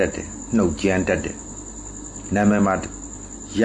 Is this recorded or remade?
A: recorded